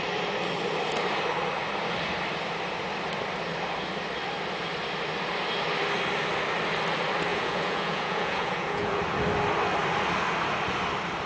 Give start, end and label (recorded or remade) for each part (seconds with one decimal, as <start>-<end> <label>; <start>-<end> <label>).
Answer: 0.0-7.3 recorded; 7.3-9.0 remade; 9.0-11.3 recorded